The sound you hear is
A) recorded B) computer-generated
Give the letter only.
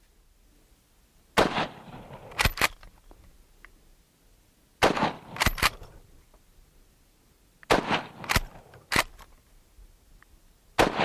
A